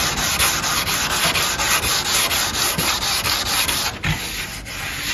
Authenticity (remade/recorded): recorded